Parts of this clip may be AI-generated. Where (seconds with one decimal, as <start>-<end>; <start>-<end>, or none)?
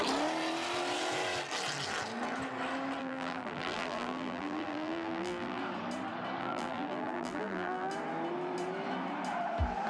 3.0-5.6; 6.4-7.9